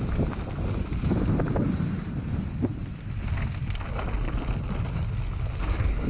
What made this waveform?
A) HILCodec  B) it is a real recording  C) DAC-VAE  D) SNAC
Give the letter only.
B